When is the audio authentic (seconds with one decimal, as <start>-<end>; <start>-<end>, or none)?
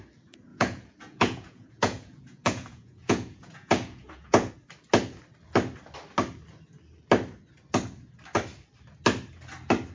0.0-0.5; 4.5-9.9